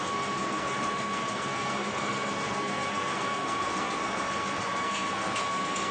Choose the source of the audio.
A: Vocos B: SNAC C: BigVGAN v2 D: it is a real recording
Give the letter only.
B